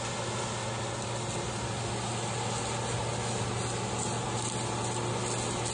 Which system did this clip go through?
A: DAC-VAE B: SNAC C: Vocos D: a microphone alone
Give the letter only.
D